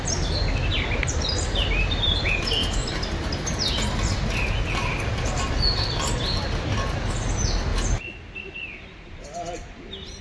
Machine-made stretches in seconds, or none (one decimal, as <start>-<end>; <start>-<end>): none